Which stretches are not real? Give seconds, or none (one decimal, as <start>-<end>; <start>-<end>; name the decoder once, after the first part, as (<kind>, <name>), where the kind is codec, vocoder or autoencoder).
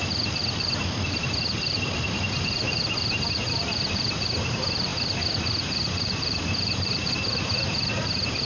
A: 0.0-8.4 (vocoder, BigVGAN v2)